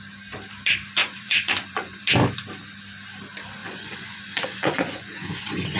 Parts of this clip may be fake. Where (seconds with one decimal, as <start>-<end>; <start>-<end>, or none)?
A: 1.0-2.0; 3.6-5.8